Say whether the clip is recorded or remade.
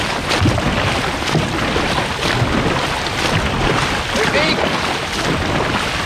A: recorded